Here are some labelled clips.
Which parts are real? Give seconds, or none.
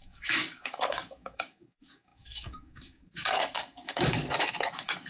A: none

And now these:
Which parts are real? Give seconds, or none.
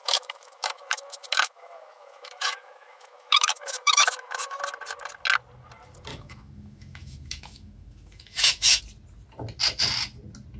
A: 4.6-6.1; 8.8-10.6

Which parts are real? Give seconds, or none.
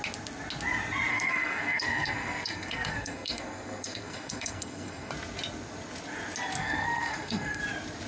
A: 0.0-1.1; 5.1-6.6; 7.6-8.1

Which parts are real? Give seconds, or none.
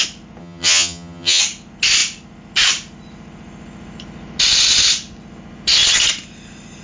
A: 0.0-0.4; 1.4-6.8